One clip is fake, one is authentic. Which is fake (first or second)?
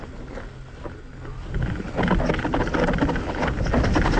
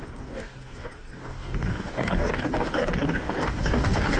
second